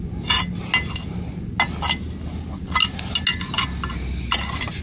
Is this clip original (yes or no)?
yes